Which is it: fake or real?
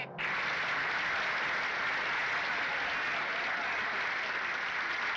real